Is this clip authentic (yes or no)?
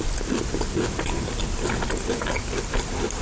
yes